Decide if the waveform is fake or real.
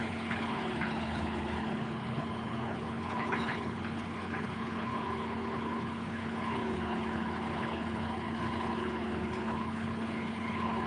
fake